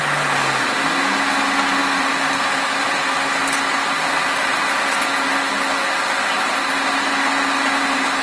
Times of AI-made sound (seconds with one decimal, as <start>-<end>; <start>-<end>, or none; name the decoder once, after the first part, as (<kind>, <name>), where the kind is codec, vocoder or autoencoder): none